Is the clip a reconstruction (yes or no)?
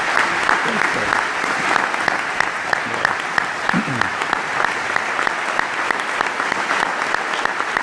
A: no